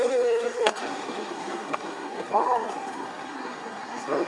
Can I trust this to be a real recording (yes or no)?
no